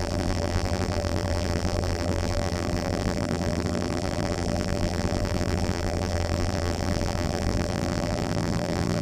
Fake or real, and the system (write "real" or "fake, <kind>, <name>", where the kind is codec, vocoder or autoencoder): fake, vocoder, BigVGAN v2